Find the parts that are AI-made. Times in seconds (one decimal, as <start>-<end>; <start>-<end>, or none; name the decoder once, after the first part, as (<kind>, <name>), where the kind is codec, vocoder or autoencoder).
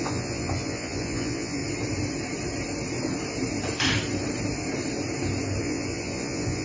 0.0-1.6 (vocoder, Vocos); 5.6-6.6